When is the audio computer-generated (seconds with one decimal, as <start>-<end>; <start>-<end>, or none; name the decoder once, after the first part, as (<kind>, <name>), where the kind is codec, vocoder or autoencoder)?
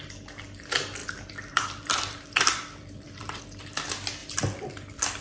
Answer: 1.0-3.4 (vocoder, BigVGAN v2); 4.2-5.2